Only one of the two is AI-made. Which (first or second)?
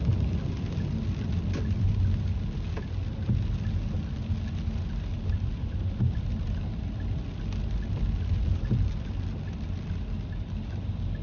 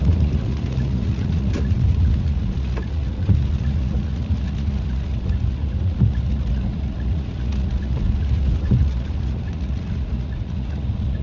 second